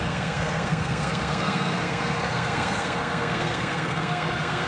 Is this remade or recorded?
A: remade